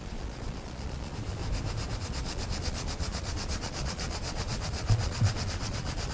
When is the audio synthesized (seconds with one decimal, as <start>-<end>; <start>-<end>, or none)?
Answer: 0.0-1.4; 2.0-6.1